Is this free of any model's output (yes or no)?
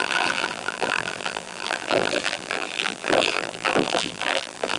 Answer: no